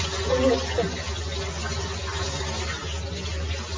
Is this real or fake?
real